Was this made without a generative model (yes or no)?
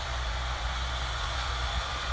no